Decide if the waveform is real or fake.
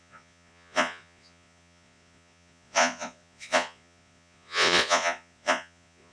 fake